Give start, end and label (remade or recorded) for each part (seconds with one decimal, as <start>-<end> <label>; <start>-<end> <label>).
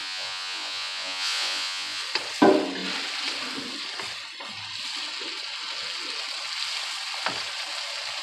0.0-2.0 remade; 2.0-8.2 recorded